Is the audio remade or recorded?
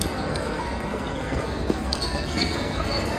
remade